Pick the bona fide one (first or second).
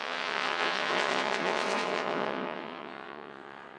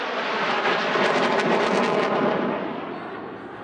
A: second